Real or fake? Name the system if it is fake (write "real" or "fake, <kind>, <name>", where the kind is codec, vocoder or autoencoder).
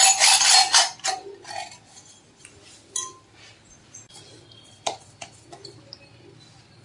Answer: real